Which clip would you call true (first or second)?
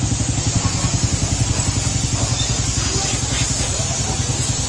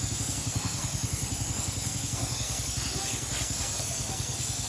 first